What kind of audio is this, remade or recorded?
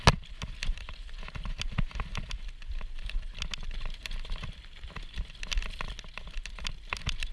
recorded